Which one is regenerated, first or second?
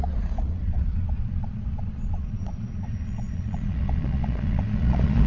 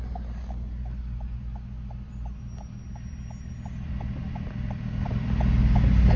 first